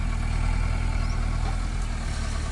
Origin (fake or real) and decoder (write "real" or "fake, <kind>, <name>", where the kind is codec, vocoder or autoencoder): real